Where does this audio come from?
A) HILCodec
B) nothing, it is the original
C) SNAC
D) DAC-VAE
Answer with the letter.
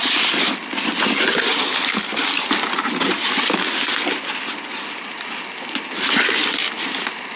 B